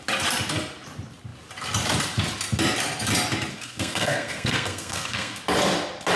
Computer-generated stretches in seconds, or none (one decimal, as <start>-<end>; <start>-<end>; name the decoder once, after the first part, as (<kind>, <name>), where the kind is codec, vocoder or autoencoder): 3.5-5.4 (codec, SNAC)